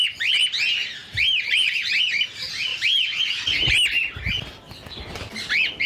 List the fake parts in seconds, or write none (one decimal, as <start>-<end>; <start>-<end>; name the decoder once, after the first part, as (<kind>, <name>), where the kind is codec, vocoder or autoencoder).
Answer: 1.0-1.9 (vocoder, BigVGAN v2)

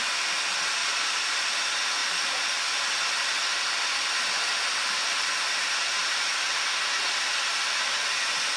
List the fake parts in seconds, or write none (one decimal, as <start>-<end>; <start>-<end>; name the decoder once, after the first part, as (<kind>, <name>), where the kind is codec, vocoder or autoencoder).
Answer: 0.8-1.4 (vocoder, BigVGAN v2); 2.0-4.2; 6.0-7.3

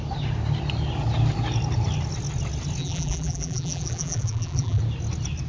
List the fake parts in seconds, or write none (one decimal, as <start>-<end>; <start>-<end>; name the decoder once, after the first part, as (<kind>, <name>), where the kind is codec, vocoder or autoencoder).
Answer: 2.8-4.8 (vocoder, BigVGAN v2)

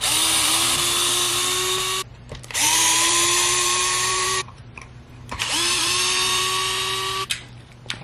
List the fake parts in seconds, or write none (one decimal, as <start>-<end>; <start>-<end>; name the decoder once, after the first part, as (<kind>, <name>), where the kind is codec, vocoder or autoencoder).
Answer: 2.1-6.4 (vocoder, BigVGAN v2)

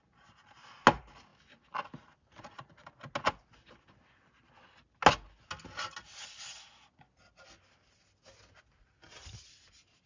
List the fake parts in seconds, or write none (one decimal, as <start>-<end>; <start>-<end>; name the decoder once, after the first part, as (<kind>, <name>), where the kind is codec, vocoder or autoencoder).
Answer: 1.3-3.0 (vocoder, BigVGAN v2)

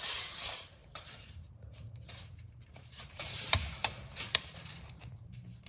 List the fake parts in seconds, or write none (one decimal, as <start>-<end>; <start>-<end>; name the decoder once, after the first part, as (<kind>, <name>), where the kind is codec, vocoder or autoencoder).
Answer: 0.0-5.7 (vocoder, BigVGAN v2)

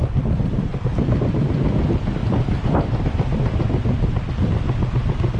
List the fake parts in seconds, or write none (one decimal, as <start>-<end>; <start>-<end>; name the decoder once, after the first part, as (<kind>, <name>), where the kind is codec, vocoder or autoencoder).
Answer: 0.7-1.3 (vocoder, BigVGAN v2); 2.2-4.3

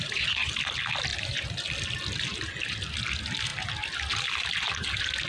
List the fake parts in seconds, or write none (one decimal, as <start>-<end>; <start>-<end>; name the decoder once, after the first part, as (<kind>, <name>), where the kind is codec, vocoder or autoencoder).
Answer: 1.1-1.7 (vocoder, BigVGAN v2)